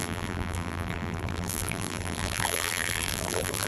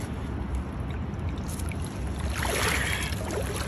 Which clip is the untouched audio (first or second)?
second